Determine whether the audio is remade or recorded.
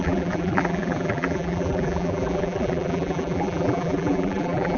remade